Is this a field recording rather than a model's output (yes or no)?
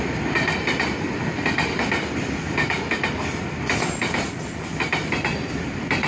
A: yes